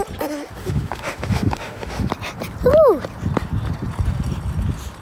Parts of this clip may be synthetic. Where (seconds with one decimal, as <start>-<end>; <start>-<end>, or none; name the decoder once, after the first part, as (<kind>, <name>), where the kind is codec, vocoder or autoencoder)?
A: 0.6-2.1 (autoencoder, DAC-VAE)